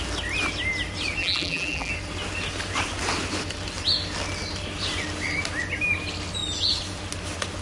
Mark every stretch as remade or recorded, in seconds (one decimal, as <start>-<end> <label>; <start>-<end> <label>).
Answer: 0.0-1.2 recorded; 1.2-1.9 remade; 1.9-7.6 recorded

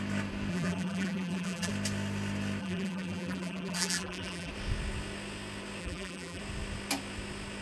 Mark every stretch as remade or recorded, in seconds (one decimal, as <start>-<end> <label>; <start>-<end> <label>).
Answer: 0.0-0.5 recorded; 0.5-1.7 remade; 1.7-2.6 recorded; 2.6-4.5 remade; 4.5-5.8 recorded; 5.8-6.4 remade; 6.4-7.6 recorded

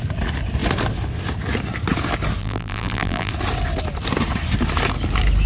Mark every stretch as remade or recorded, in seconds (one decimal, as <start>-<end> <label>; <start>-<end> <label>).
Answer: 0.0-2.4 recorded; 2.4-3.3 remade; 3.3-5.5 recorded

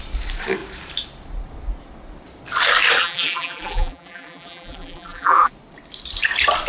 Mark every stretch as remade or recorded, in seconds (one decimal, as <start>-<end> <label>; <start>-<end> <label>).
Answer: 0.0-3.0 recorded; 3.0-5.5 remade; 5.5-6.7 recorded

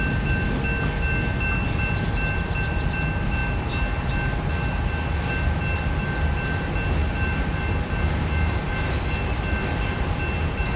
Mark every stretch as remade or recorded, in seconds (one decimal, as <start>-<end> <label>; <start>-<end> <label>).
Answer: 0.0-10.8 recorded

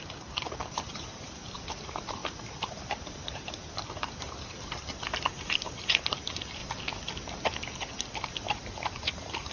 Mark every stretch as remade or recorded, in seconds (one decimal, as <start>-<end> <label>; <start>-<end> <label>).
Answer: 0.0-6.6 remade; 6.6-8.5 recorded; 8.5-9.5 remade

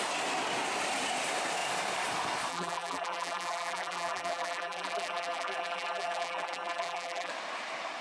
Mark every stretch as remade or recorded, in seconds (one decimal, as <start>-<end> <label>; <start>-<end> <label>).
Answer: 0.0-2.5 recorded; 2.5-7.3 remade; 7.3-8.0 recorded

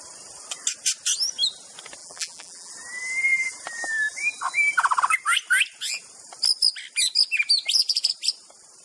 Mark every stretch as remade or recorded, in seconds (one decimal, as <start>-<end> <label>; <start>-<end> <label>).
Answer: 0.0-2.0 recorded; 2.0-2.7 remade; 2.7-8.8 recorded